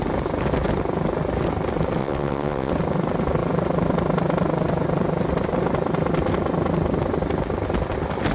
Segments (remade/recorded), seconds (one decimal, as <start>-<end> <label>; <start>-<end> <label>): 0.0-2.0 recorded; 2.0-2.7 remade; 2.7-8.3 recorded